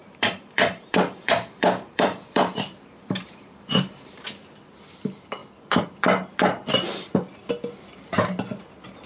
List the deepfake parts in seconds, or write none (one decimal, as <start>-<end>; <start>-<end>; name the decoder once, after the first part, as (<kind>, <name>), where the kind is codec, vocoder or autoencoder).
0.0-4.2 (vocoder, BigVGAN v2)